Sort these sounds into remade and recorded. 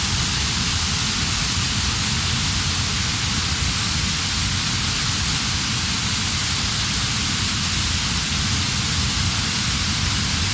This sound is recorded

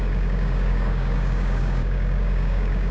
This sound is remade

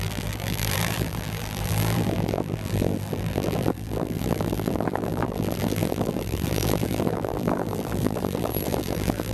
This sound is remade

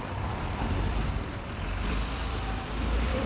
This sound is remade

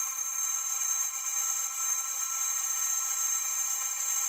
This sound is remade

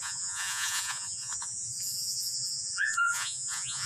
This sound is remade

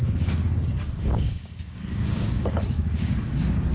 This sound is remade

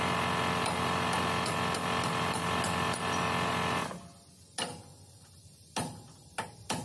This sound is recorded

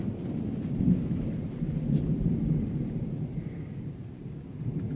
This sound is remade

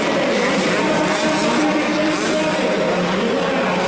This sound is recorded